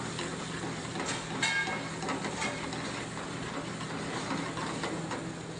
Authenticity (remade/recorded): recorded